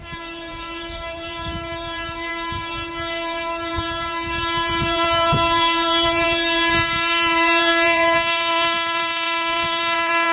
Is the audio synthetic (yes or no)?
yes